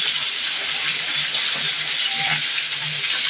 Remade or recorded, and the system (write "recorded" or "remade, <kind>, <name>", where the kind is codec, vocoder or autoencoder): recorded